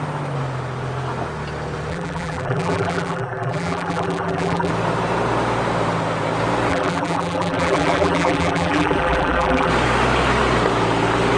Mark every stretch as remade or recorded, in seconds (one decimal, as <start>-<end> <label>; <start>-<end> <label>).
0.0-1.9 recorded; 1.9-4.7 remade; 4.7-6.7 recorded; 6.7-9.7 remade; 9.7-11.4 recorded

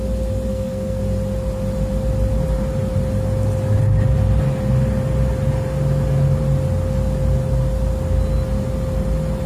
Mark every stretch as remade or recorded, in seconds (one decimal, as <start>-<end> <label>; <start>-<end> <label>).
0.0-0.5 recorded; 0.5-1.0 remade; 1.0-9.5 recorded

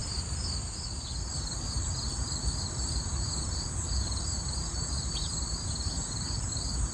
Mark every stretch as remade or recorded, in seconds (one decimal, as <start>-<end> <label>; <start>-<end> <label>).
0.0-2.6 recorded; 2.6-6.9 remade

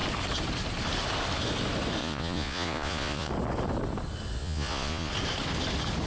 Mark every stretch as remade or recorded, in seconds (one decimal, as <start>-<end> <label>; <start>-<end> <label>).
0.0-2.0 recorded; 2.0-3.3 remade; 3.3-4.4 recorded; 4.4-5.1 remade; 5.1-6.1 recorded

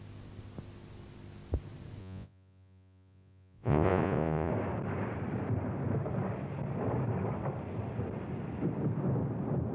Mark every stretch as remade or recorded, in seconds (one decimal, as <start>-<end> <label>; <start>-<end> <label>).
0.0-2.0 recorded; 2.0-4.5 remade; 4.5-9.7 recorded

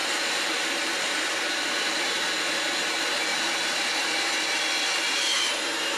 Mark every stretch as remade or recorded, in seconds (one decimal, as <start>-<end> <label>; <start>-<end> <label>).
0.0-2.5 remade; 2.5-6.0 recorded

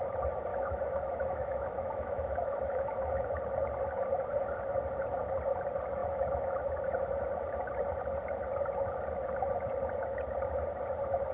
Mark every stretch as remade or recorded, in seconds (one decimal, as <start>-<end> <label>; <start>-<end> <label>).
0.0-0.5 recorded; 0.5-3.4 remade; 3.4-6.0 recorded; 6.0-6.7 remade; 6.7-11.3 recorded